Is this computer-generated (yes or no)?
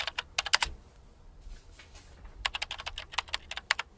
no